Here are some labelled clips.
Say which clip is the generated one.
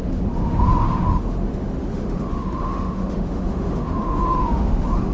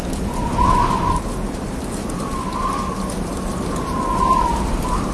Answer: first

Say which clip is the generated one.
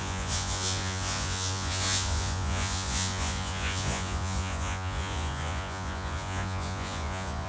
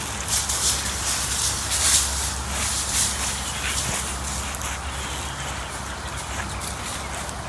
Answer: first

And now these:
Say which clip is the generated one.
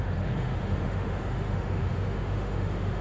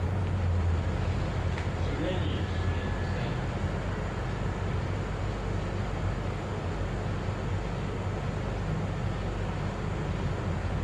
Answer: first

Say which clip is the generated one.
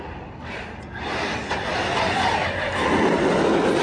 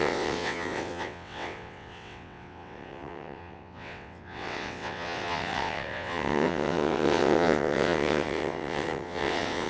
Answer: second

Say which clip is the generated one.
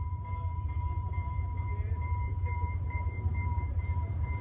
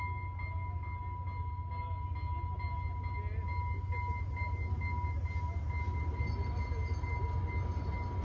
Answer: first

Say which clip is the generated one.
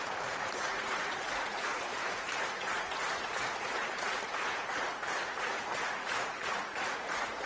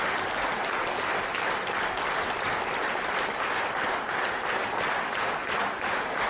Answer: first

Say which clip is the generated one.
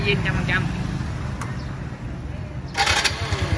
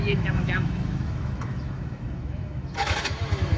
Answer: second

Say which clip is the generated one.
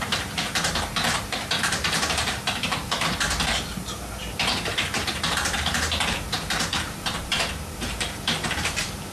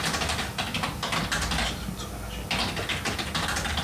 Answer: first